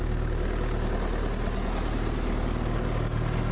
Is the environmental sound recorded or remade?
recorded